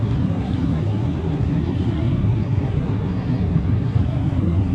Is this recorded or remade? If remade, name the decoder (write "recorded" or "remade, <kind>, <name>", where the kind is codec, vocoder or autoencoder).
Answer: remade, codec, SNAC